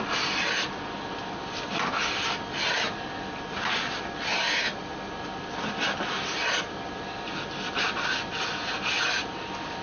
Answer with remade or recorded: recorded